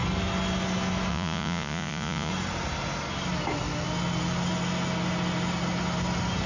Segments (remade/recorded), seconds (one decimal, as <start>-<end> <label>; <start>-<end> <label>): 0.0-1.1 recorded; 1.1-2.3 remade; 2.3-6.5 recorded